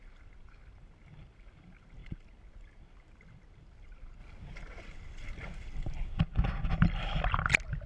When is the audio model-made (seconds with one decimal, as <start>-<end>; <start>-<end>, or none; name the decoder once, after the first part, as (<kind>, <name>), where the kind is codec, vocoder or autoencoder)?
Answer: none